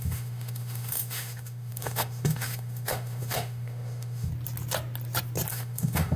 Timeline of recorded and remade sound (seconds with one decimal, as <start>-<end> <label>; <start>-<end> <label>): 0.0-4.3 remade; 4.3-5.5 recorded; 5.5-6.2 remade